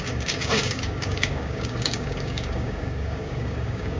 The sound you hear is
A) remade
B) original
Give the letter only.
A